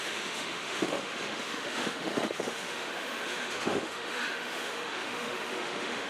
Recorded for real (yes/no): no